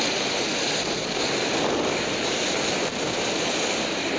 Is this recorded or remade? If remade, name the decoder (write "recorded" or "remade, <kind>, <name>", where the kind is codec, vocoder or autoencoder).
remade, vocoder, BigVGAN v2